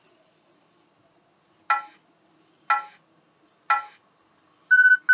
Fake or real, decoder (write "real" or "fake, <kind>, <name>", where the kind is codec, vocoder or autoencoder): real